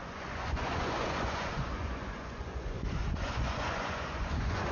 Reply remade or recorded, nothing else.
remade